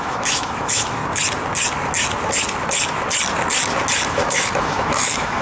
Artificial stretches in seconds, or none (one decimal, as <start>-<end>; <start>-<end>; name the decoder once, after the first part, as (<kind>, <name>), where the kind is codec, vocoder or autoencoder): 0.0-1.0 (autoencoder, DAC-VAE); 4.1-5.4